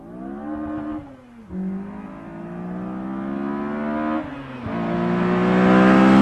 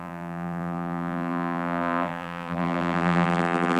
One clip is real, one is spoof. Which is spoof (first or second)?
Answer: second